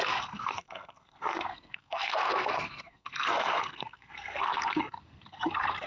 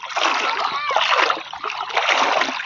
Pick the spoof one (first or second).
first